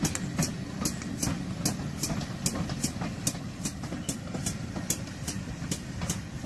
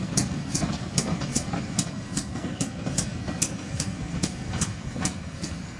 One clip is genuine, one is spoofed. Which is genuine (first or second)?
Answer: first